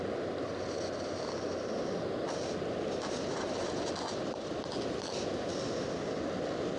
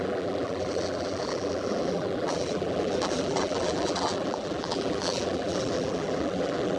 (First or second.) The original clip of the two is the first